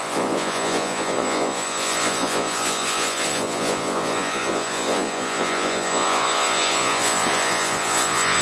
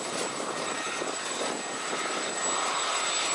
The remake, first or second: first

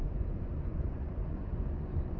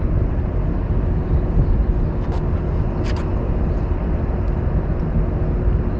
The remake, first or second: first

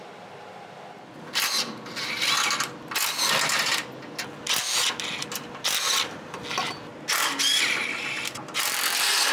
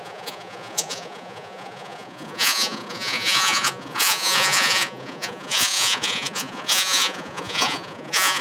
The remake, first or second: second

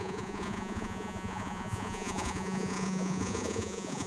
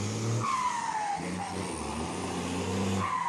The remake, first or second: first